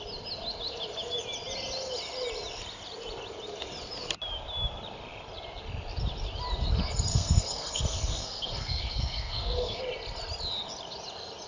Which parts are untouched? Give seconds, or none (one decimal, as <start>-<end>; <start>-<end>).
0.0-7.1; 9.8-11.5